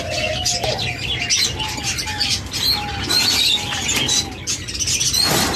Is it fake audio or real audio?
real